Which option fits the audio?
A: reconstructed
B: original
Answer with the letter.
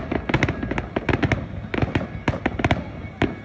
B